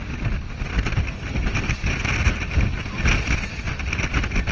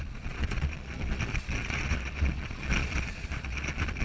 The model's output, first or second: second